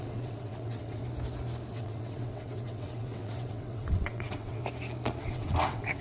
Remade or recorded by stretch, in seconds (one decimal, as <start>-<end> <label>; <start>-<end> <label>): 0.0-1.0 remade; 1.0-1.7 recorded; 1.7-4.6 remade; 4.6-5.2 recorded; 5.2-6.0 remade